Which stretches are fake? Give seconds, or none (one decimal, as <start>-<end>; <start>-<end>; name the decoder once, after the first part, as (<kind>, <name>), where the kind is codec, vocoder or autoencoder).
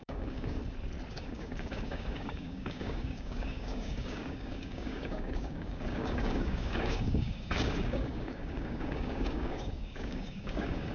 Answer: 0.0-0.6 (codec, DAC); 1.1-10.9